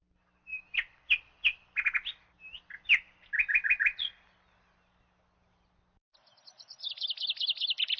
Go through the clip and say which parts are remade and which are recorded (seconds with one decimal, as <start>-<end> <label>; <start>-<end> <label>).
0.0-8.0 recorded